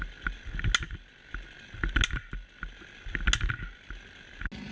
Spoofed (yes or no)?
no